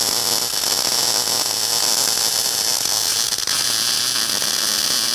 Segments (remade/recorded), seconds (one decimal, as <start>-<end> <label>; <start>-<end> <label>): 0.0-5.1 recorded